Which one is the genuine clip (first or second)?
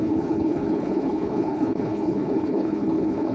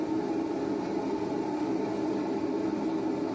second